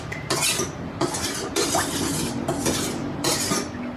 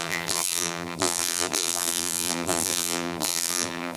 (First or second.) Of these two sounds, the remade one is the second